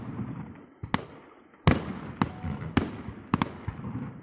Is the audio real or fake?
real